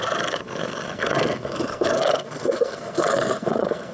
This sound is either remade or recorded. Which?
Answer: remade